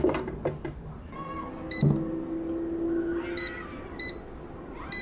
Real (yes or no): yes